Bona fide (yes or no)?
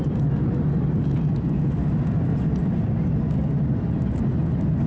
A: yes